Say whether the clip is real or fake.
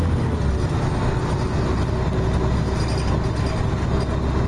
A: real